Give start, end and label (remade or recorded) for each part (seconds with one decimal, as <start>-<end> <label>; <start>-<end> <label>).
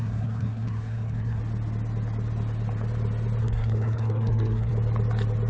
0.0-1.4 remade; 1.4-3.4 recorded; 3.4-4.7 remade; 4.7-5.5 recorded